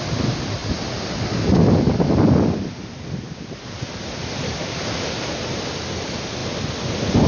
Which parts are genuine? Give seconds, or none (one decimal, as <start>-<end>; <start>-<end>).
0.0-7.3